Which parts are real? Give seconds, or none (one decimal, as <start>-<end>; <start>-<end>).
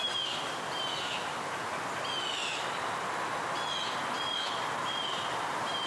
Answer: 0.0-5.9